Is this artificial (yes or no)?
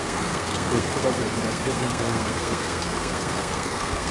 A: yes